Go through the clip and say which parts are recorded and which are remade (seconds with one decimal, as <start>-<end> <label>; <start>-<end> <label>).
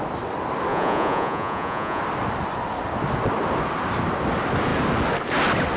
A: 0.0-0.7 recorded; 0.7-2.0 remade; 2.0-5.8 recorded